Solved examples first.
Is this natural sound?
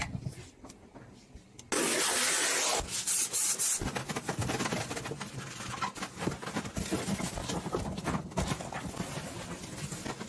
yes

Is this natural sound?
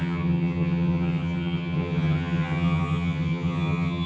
no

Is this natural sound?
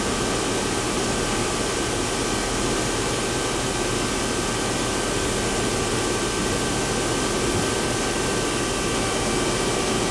yes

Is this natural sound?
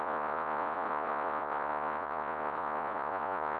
no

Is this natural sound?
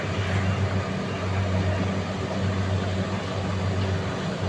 yes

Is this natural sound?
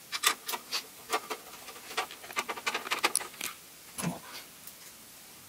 yes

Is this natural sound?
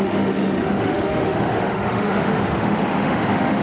no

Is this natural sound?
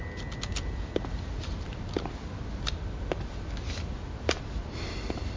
yes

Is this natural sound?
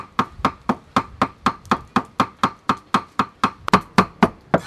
yes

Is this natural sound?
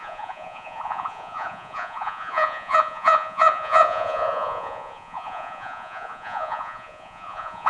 no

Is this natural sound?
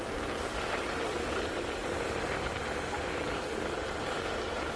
yes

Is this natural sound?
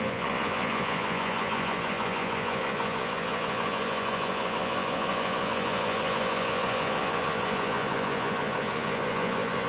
no